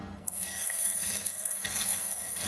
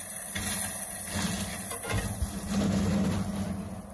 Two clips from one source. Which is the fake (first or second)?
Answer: first